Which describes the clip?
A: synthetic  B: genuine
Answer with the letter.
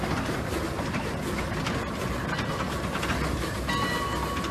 B